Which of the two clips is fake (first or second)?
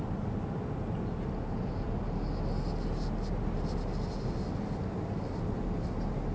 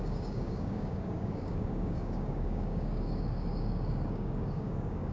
second